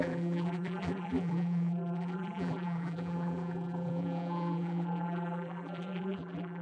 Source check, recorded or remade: remade